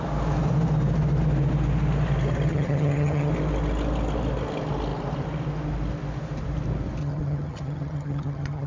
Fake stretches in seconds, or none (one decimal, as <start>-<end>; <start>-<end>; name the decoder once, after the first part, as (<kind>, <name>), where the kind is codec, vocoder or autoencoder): 2.5-3.3 (vocoder, HiFi-GAN); 7.0-8.7